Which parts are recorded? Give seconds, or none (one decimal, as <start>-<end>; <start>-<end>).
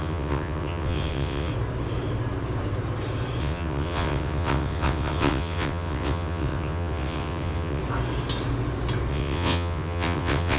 1.5-3.4; 7.8-9.1